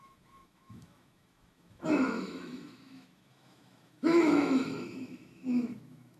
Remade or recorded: remade